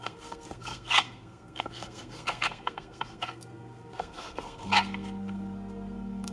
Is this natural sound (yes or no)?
no